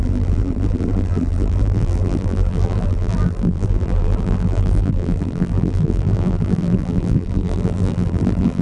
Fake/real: fake